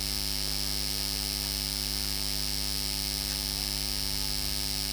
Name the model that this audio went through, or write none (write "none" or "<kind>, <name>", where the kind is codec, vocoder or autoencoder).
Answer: none